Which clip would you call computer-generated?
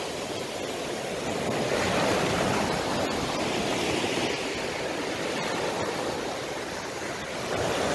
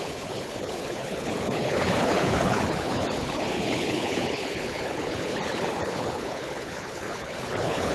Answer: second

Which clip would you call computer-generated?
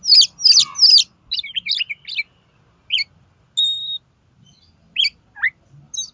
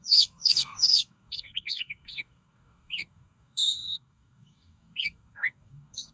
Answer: second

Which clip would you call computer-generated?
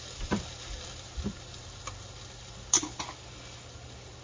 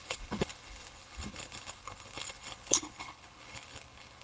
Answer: second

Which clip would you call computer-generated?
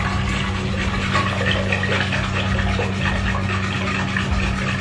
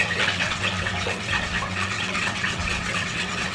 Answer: second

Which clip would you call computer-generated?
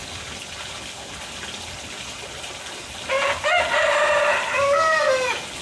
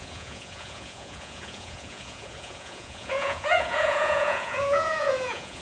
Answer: second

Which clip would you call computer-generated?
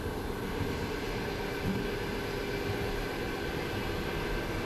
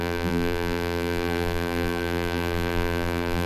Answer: second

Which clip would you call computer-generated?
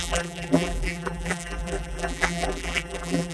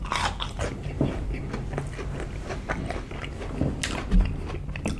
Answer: first